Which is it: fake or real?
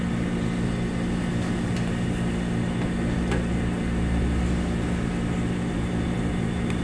real